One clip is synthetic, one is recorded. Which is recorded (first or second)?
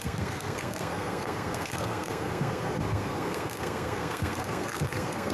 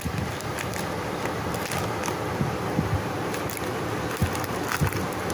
second